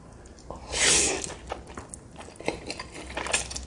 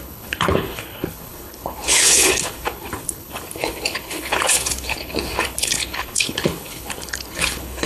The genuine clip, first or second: first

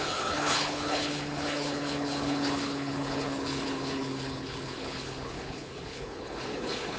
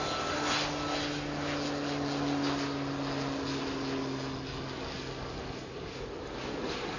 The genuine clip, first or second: second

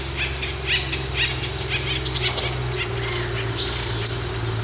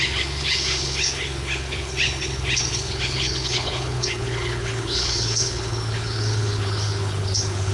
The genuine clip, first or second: first